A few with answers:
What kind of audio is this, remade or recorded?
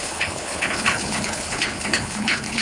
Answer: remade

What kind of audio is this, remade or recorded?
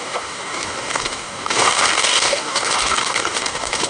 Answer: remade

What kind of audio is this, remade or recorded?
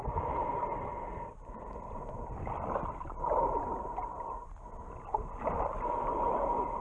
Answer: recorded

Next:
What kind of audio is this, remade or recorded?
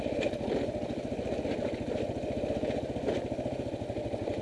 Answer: recorded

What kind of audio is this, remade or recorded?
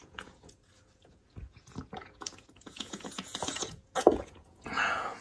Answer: remade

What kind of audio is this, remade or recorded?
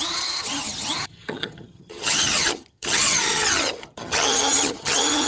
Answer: remade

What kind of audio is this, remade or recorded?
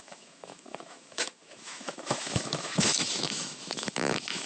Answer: remade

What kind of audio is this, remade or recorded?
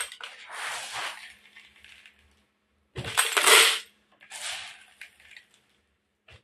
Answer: recorded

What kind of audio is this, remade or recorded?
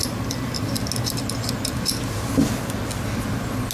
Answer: recorded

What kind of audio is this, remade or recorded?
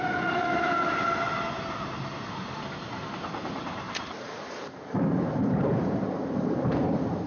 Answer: remade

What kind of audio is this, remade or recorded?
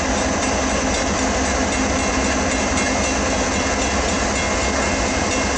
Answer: recorded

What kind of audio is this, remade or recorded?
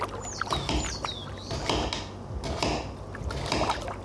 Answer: recorded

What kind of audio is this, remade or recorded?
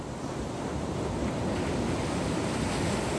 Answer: recorded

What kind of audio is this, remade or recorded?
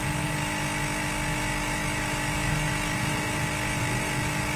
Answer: remade